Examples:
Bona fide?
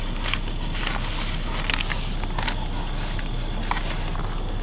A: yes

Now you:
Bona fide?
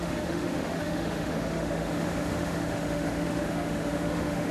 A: no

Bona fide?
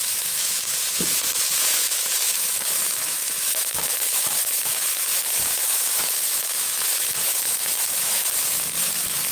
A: no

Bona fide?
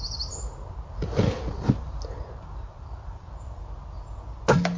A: yes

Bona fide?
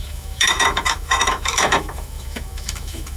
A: no